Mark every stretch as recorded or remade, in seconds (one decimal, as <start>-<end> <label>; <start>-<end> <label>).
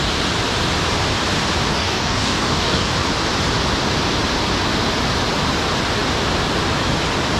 0.0-1.7 recorded; 1.7-2.9 remade; 2.9-7.4 recorded